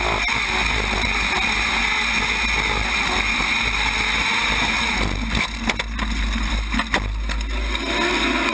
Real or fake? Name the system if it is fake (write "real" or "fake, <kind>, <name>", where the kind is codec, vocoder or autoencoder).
real